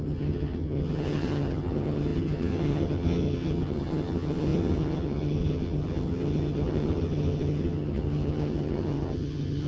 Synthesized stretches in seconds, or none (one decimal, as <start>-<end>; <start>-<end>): 0.0-9.7